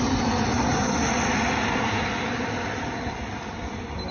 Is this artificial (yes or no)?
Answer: no